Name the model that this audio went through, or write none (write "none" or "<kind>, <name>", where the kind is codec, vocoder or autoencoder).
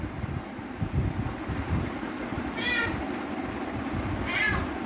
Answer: none